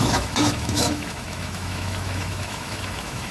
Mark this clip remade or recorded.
remade